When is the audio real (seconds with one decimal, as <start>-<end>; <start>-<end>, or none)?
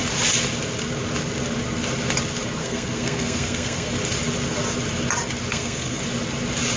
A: 0.0-2.6; 3.9-5.5; 6.0-6.8